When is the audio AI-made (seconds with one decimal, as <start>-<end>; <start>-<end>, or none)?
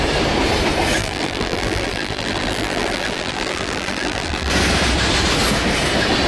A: 1.0-4.5